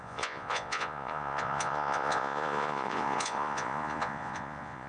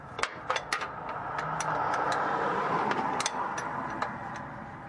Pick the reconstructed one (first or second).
first